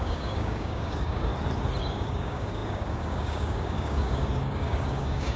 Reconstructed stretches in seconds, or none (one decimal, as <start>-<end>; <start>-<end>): 0.0-1.3; 1.8-5.4